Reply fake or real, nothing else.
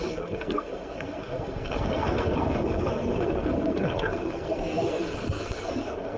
fake